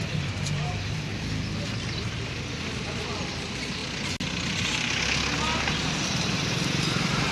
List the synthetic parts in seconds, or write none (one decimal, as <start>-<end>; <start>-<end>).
0.0-1.1; 1.6-3.8; 5.7-7.3